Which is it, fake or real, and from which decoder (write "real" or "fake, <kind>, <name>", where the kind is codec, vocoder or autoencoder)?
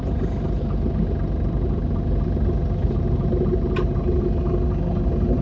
real